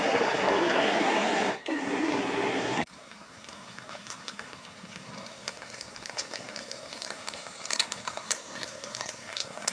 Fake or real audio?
fake